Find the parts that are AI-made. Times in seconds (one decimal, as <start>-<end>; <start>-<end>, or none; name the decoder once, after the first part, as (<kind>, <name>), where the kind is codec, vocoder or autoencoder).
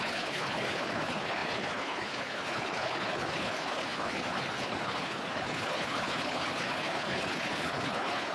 0.0-8.3 (codec, HILCodec)